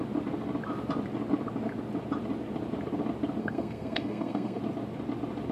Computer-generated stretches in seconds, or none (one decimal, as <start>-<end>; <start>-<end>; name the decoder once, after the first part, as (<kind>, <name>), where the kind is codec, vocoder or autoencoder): 3.4-4.6 (codec, SNAC)